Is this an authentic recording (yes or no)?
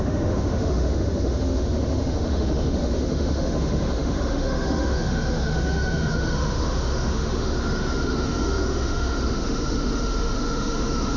no